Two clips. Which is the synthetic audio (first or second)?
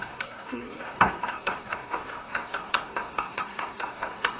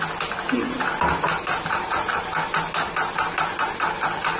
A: first